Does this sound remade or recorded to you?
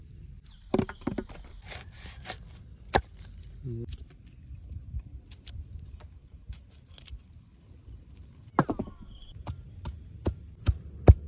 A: recorded